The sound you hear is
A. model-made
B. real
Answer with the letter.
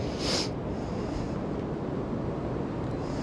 B